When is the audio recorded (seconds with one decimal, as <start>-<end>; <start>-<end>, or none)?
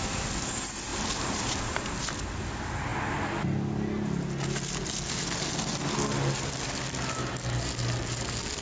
0.0-0.9; 2.0-8.6